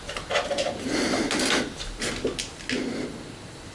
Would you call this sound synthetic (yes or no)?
no